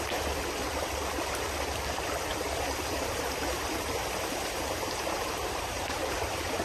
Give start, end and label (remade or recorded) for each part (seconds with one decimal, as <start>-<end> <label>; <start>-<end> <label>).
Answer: 0.0-2.3 recorded; 2.3-6.6 remade